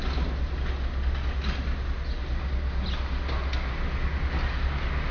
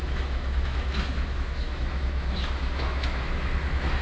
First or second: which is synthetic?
second